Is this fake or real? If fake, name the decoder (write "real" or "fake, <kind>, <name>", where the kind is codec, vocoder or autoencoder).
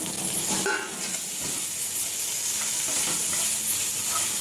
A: real